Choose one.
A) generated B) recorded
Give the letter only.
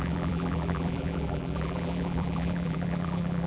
A